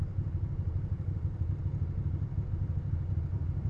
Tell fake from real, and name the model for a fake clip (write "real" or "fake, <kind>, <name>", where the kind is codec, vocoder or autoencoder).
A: real